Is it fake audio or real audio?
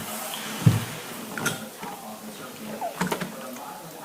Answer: real